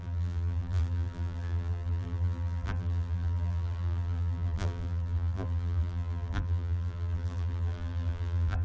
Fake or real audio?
fake